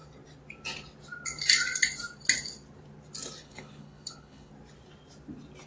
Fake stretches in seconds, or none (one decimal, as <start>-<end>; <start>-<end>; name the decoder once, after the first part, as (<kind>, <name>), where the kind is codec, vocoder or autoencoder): 3.4-4.5 (codec, HILCodec)

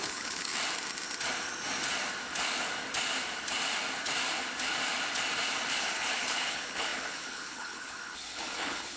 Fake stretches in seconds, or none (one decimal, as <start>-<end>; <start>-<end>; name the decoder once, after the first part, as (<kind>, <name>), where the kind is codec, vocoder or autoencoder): 0.0-0.5 (codec, HILCodec); 5.7-9.0

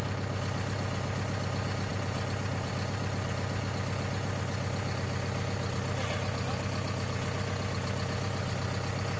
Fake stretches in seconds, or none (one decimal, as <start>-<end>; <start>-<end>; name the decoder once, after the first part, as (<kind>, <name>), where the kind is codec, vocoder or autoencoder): none